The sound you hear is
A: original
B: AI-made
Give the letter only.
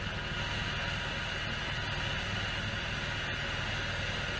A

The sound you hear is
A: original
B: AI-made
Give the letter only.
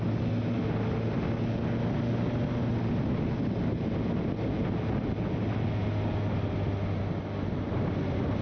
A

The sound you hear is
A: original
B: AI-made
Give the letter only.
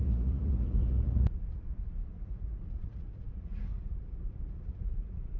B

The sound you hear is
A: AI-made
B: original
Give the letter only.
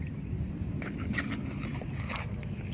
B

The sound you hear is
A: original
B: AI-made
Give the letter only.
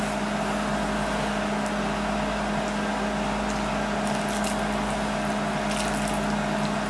A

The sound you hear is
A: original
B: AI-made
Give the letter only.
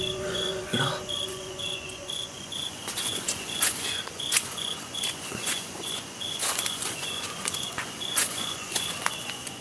B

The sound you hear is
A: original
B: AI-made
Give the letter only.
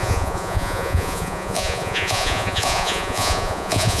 B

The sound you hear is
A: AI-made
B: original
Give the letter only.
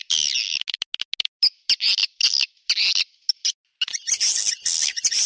B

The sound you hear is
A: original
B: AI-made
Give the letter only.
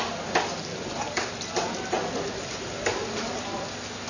A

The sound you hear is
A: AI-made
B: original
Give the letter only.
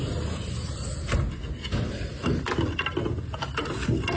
B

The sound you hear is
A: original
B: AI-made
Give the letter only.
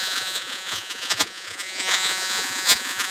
B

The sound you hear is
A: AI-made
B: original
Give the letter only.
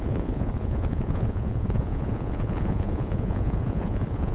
A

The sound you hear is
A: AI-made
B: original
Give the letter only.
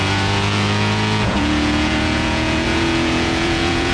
A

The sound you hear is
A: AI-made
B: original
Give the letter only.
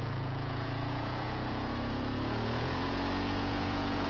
A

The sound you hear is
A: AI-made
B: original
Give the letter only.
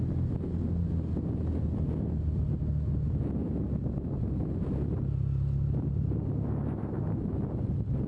B